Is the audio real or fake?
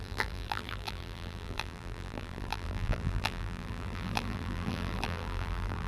fake